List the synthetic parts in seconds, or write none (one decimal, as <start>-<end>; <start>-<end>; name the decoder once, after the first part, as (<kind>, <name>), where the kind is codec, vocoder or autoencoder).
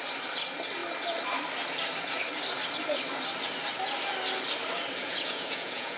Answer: 5.0-6.0 (vocoder, Vocos)